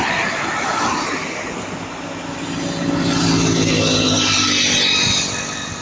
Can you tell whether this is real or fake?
real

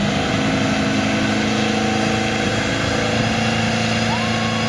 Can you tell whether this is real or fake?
real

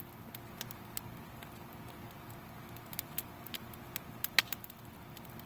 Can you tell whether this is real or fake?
real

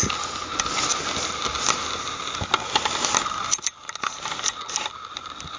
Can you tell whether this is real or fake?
real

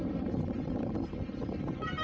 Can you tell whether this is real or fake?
real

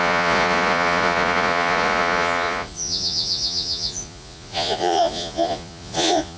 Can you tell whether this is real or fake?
fake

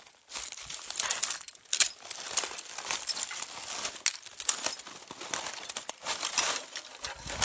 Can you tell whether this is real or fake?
real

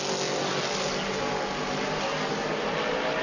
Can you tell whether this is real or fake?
real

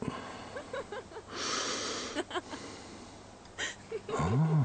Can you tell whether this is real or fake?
real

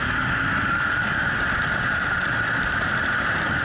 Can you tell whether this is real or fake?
real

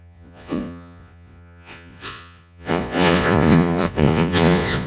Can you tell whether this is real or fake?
fake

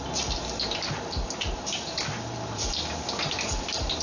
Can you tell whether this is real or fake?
real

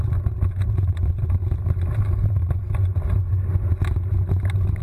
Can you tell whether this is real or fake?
real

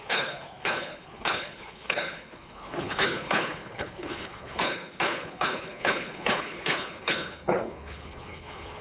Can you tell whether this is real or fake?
fake